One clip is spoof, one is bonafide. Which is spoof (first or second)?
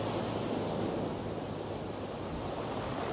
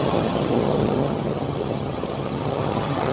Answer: second